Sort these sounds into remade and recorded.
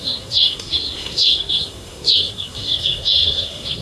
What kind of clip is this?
remade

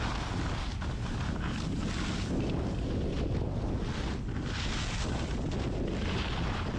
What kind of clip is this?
recorded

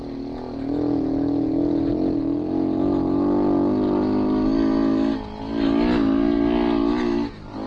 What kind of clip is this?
recorded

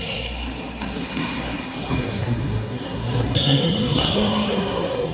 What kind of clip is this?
remade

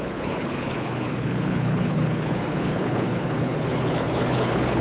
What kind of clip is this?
remade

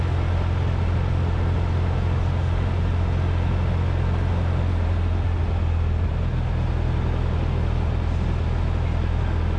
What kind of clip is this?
recorded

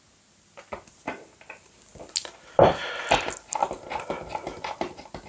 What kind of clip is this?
recorded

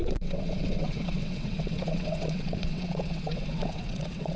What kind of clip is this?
remade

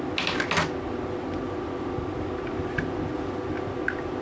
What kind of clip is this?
recorded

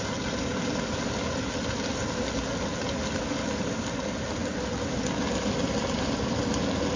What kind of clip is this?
recorded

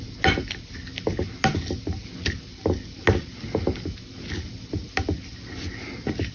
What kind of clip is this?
recorded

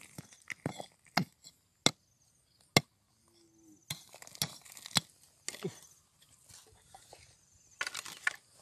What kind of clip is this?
recorded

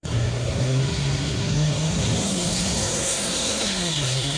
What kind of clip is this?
remade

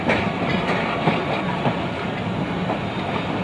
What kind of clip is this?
recorded